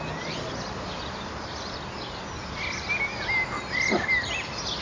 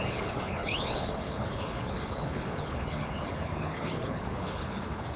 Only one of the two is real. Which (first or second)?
first